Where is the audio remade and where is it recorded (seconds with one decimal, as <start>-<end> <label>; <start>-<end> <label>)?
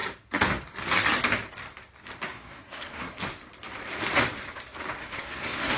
0.0-2.3 recorded; 2.3-3.2 remade; 3.2-5.0 recorded; 5.0-5.8 remade